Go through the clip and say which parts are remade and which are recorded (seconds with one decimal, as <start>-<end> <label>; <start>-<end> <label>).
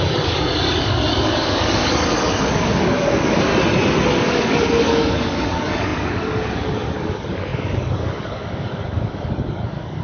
0.0-3.5 remade; 3.5-4.1 recorded; 4.1-10.0 remade